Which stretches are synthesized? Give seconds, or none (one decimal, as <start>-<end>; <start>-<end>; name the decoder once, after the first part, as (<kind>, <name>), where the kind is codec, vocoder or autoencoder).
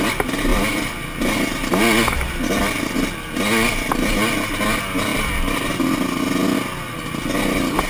0.5-1.8 (vocoder, BigVGAN v2); 5.1-5.7